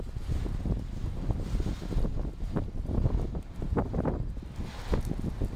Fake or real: real